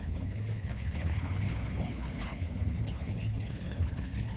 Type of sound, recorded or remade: remade